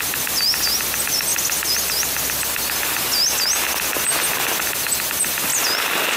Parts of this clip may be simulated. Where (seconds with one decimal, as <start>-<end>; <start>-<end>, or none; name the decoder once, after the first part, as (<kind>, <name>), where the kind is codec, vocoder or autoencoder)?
none